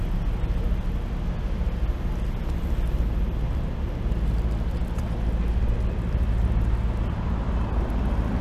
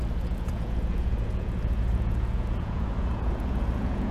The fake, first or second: second